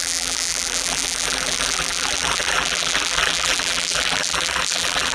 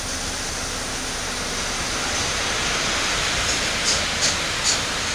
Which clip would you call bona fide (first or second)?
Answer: second